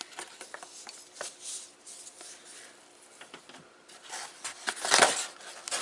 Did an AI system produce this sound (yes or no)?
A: no